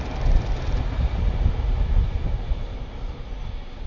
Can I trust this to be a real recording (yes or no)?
yes